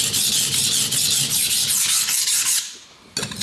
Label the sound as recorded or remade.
recorded